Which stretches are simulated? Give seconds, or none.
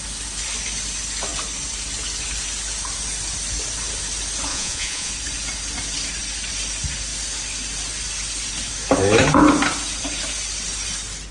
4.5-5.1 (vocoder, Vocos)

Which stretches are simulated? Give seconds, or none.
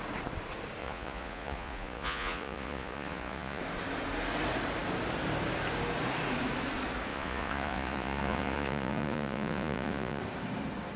0.8-3.6 (vocoder, Vocos); 7.1-10.2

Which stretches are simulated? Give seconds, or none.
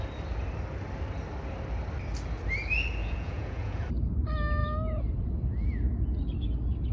3.0-3.9 (vocoder, Vocos)